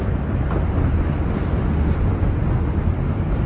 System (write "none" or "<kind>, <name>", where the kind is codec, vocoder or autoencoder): none